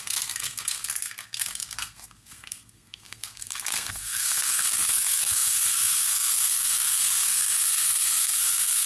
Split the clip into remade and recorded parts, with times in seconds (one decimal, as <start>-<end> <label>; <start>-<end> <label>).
0.0-8.9 remade